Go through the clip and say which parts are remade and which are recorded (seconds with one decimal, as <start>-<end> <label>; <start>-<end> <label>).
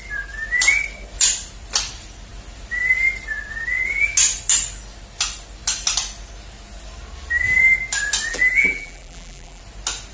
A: 0.0-8.3 recorded; 8.3-9.6 remade; 9.6-10.1 recorded